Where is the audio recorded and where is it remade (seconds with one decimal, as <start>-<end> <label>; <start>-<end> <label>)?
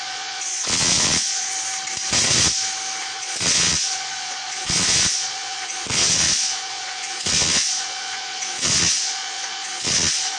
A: 0.0-1.5 remade; 1.5-3.0 recorded; 3.0-10.4 remade